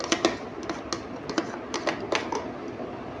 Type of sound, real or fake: real